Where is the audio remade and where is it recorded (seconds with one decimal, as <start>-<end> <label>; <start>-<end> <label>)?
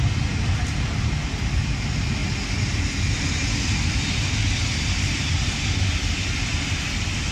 0.0-7.3 recorded